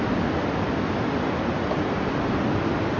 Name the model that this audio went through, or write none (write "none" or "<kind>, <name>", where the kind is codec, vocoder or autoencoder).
none